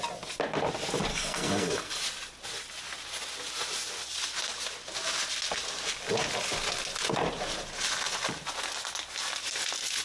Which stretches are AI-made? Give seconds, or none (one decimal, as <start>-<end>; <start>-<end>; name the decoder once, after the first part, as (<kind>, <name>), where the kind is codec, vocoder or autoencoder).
1.1-2.0 (codec, SNAC)